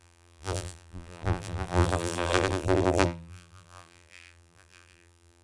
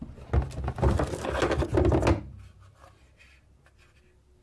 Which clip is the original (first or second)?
second